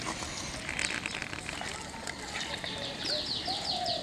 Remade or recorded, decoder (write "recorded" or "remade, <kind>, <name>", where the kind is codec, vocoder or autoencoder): recorded